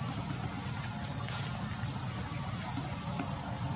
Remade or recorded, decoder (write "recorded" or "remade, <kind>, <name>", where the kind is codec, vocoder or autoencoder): recorded